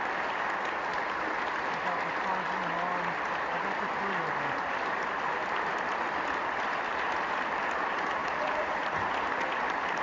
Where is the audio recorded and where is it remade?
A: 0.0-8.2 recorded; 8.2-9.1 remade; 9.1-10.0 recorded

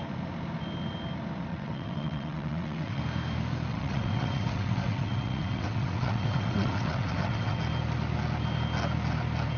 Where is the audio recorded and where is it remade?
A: 0.0-1.5 recorded; 1.5-3.0 remade; 3.0-3.7 recorded; 3.7-7.6 remade; 7.6-9.6 recorded